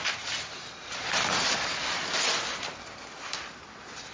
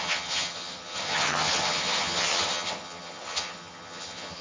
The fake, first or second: second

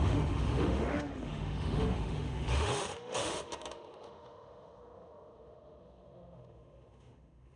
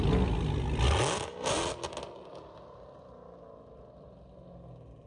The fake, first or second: first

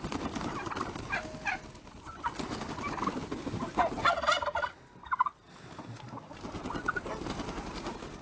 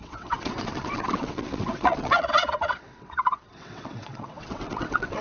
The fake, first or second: second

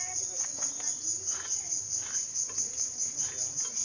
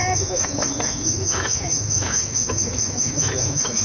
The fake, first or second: second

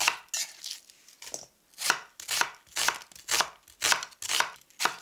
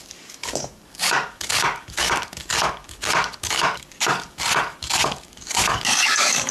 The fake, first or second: second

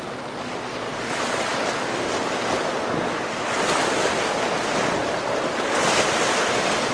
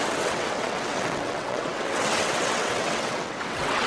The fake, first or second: second